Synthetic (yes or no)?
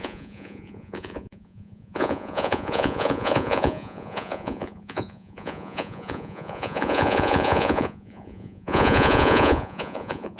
yes